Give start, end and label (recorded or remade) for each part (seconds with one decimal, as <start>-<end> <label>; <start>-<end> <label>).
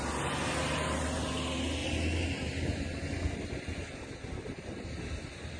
0.0-5.6 recorded